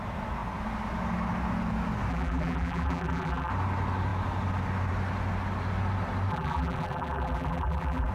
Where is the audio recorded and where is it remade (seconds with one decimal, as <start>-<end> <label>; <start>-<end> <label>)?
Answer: 0.0-2.1 recorded; 2.1-3.5 remade; 3.5-6.3 recorded; 6.3-8.1 remade